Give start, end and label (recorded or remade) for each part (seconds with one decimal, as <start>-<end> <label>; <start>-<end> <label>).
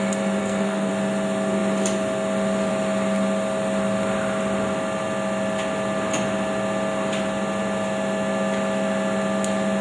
0.0-0.4 recorded; 0.4-0.9 remade; 0.9-9.8 recorded